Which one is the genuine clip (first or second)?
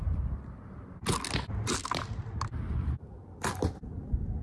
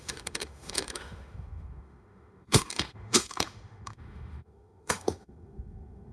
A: first